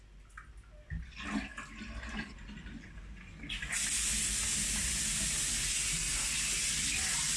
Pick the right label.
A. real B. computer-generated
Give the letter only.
A